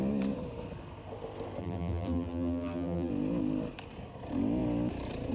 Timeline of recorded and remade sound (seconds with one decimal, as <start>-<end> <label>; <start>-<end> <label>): 0.0-1.6 recorded; 1.6-3.1 remade; 3.1-5.3 recorded